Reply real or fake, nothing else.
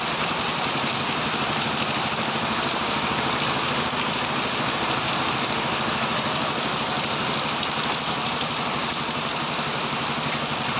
real